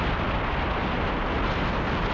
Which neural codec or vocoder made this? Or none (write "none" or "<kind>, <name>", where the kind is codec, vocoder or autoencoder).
none